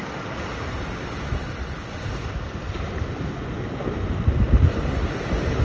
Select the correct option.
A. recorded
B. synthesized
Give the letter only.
A